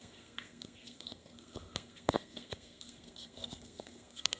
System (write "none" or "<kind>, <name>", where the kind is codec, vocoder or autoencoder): codec, SNAC